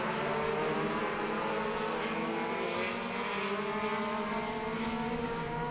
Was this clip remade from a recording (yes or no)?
no